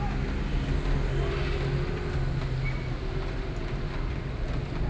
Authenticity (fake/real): real